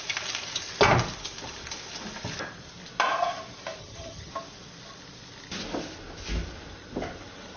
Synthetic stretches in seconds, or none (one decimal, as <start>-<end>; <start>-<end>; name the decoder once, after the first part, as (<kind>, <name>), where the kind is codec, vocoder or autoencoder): 3.8-4.3 (vocoder, HiFi-GAN)